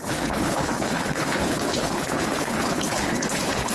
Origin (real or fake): fake